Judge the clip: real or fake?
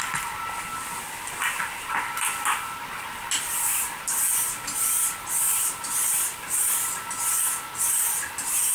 real